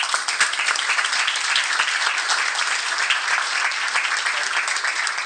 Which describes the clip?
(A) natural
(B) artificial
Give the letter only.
A